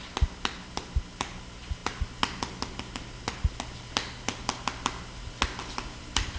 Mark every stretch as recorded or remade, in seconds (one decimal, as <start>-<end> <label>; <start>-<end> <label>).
0.0-6.4 recorded